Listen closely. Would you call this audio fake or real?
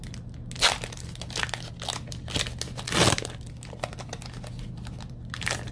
real